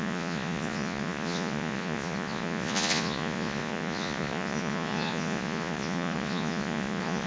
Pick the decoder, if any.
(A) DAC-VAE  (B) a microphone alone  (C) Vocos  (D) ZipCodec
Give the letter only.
C